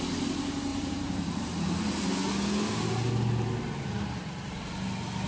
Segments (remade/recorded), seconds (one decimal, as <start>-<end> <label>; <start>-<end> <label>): 0.0-0.7 recorded; 0.7-2.0 remade; 2.0-5.3 recorded